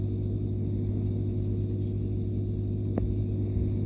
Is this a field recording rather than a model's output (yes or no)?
yes